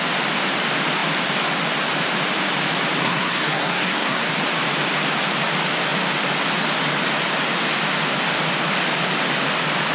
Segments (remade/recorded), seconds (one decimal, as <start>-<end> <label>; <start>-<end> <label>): 0.0-3.0 recorded; 3.0-4.3 remade; 4.3-9.9 recorded